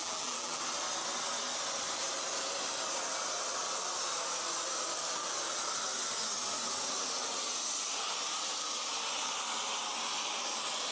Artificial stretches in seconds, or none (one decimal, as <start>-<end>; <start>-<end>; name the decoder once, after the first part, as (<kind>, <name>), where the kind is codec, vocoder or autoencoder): 0.0-0.6 (vocoder, BigVGAN v2)